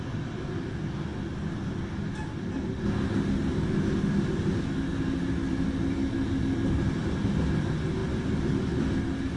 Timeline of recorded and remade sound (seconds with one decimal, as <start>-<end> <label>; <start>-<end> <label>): 0.0-9.4 recorded